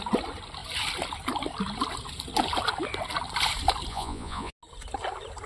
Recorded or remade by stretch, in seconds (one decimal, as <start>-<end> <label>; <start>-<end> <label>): 0.0-3.9 recorded; 3.9-4.5 remade; 4.5-5.5 recorded